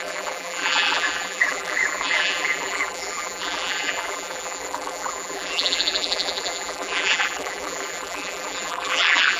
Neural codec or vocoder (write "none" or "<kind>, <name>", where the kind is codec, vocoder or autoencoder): vocoder, BigVGAN v2